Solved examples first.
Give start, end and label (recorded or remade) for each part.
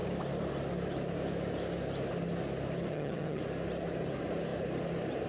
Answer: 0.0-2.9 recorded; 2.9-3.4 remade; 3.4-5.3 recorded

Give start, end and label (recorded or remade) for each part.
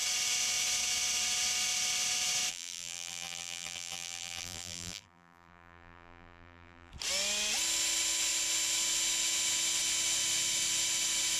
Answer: 0.0-2.5 recorded; 2.5-6.9 remade; 6.9-11.4 recorded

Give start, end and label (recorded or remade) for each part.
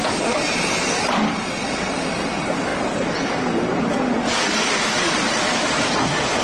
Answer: 0.0-2.7 remade; 2.7-3.8 recorded; 3.8-6.4 remade